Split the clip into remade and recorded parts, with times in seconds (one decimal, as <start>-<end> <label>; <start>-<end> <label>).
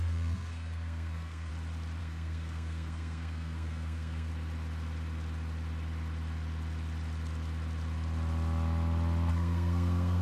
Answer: 0.0-1.5 remade; 1.5-2.0 recorded; 2.0-4.3 remade; 4.3-9.3 recorded; 9.3-10.2 remade